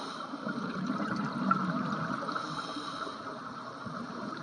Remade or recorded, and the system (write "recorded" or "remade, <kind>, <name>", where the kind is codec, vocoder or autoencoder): remade, vocoder, BigVGAN v2